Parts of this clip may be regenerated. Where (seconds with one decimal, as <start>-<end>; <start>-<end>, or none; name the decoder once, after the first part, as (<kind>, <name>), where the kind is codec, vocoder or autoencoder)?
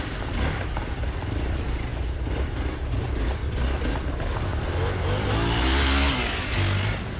none